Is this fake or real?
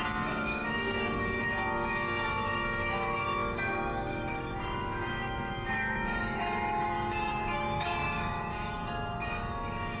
fake